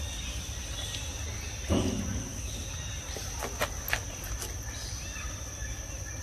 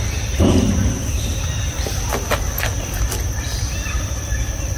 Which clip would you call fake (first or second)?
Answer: second